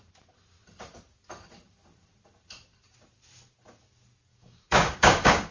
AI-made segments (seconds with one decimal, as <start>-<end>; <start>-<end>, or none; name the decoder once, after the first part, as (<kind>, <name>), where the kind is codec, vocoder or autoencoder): 4.3-5.5 (codec, DAC)

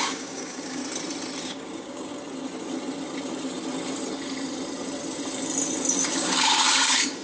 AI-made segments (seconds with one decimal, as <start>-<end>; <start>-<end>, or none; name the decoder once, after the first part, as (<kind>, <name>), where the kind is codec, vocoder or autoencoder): 0.0-0.8 (codec, DAC); 1.4-2.1; 6.1-7.2

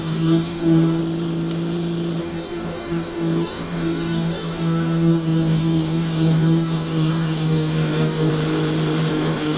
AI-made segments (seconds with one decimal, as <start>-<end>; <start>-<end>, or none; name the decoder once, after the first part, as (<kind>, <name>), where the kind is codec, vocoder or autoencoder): 0.0-1.0 (codec, DAC); 2.2-8.3; 9.1-9.6

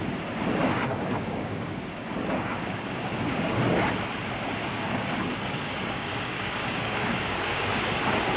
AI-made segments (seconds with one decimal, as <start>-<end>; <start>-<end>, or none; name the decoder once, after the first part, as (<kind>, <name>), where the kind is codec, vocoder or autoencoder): 0.6-3.6 (codec, DAC); 4.6-8.0

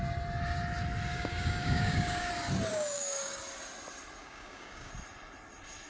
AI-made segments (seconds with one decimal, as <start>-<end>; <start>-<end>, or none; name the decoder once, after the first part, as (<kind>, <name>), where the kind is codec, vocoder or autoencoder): 1.1-2.3 (codec, DAC); 2.7-3.4; 4.2-4.9

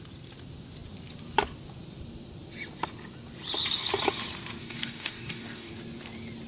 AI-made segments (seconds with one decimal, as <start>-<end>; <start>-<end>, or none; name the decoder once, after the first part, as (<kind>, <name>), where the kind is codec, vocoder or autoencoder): 4.6-5.7 (codec, DAC)